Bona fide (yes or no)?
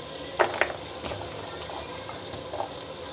yes